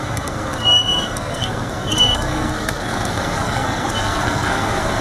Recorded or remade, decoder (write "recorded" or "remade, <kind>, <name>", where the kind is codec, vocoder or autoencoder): remade, codec, SNAC